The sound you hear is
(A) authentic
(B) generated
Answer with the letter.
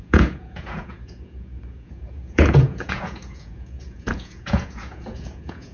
B